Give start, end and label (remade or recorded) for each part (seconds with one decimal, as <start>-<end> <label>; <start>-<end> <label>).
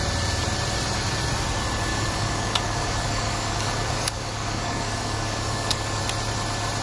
0.0-1.9 recorded; 1.9-6.0 remade; 6.0-6.8 recorded